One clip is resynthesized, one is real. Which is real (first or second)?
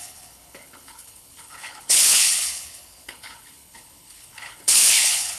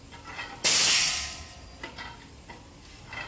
second